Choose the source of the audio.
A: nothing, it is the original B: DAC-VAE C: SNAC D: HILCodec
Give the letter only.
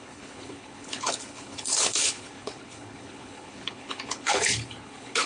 D